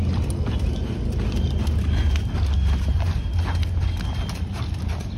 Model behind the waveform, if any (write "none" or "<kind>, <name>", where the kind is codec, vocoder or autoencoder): none